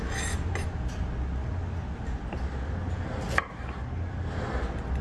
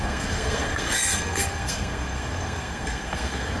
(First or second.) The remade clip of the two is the second